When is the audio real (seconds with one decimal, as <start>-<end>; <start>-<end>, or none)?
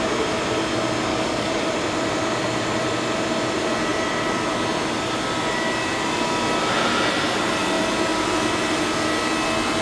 0.0-1.1; 1.7-9.8